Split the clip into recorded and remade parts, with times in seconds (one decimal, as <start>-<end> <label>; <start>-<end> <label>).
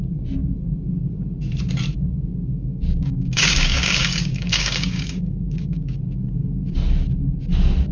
0.0-2.5 recorded; 2.5-6.0 remade; 6.0-7.9 recorded